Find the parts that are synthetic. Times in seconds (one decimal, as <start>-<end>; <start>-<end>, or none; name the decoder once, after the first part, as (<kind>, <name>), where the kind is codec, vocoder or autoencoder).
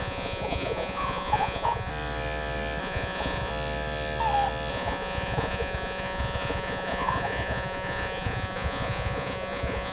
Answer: 0.0-1.9 (vocoder, Vocos); 2.8-3.5; 4.7-9.9